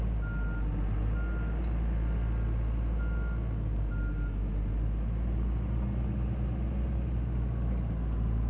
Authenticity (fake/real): real